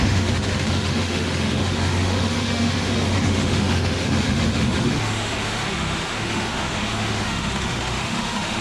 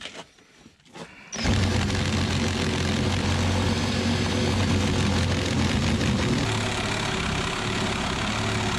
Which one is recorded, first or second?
second